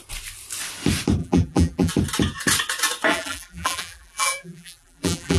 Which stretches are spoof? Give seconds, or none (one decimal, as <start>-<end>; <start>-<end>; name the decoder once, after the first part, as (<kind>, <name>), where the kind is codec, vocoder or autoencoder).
1.2-1.9 (vocoder, BigVGAN v2); 3.1-5.4